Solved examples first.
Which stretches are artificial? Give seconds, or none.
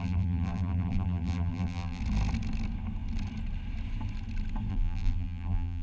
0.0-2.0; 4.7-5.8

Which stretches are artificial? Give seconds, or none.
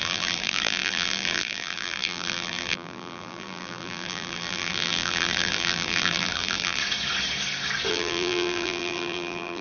0.0-6.8; 7.9-9.6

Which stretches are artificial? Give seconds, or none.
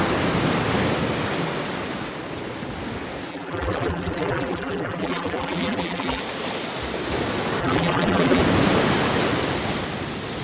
3.3-6.2; 7.6-8.4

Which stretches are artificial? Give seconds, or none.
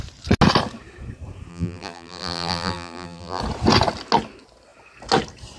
1.5-3.4